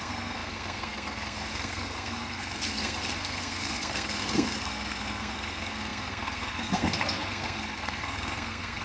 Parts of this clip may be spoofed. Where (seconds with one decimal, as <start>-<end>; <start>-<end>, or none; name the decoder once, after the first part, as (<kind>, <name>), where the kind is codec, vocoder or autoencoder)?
0.0-8.8 (codec, SNAC)